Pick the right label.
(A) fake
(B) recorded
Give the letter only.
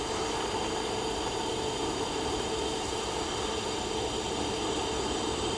B